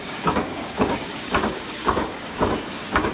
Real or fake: fake